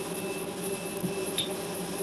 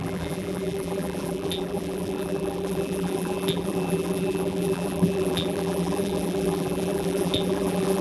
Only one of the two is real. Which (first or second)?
first